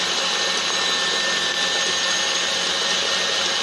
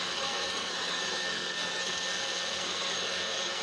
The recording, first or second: first